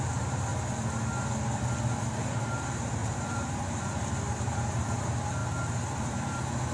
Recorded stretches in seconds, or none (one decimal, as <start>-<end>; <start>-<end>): 0.5-1.8; 5.4-6.0